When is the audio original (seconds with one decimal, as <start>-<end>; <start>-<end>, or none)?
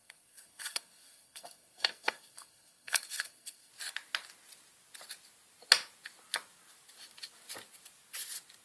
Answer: 3.7-8.6